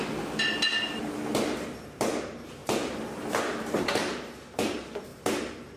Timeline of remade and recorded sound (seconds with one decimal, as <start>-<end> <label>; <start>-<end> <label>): 0.0-5.8 recorded